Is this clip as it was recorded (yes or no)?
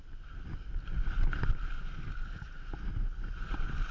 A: yes